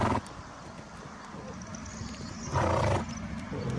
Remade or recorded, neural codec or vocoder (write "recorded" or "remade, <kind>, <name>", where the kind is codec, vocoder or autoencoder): recorded